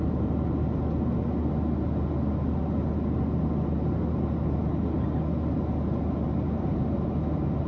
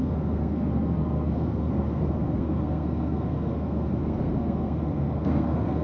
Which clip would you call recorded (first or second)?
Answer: first